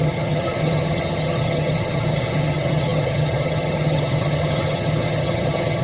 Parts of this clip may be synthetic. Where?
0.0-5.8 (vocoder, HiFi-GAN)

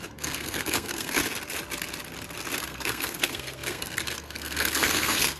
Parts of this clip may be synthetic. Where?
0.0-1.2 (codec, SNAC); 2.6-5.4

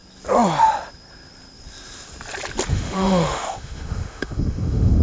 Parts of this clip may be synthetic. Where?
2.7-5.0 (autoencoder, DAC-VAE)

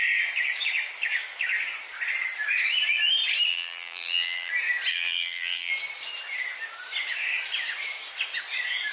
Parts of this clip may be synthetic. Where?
3.5-4.5 (vocoder, BigVGAN v2); 4.9-5.7